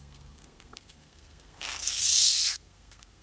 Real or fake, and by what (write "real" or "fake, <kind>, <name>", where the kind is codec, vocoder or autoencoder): fake, codec, SNAC